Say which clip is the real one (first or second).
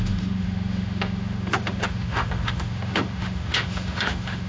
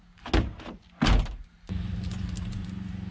second